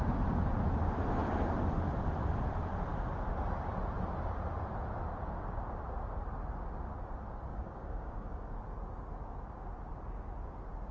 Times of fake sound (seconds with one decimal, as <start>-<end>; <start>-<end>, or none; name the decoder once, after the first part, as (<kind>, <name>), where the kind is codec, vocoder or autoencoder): 7.5-8.5 (codec, DAC)